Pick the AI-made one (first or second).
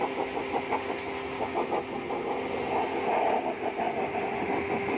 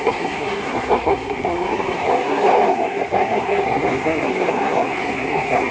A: second